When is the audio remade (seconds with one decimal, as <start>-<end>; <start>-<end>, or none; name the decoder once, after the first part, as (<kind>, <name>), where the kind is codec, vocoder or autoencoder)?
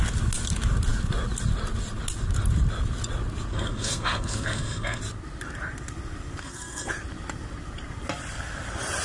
3.5-5.0 (codec, SNAC); 6.4-6.9